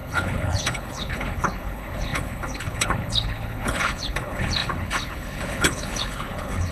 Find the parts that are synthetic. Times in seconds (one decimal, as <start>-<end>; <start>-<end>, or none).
0.0-6.7